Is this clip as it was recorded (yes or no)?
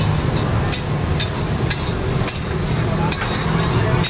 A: yes